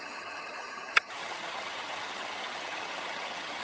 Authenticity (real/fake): fake